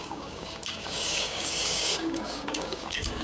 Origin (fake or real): fake